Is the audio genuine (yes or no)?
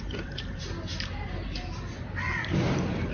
no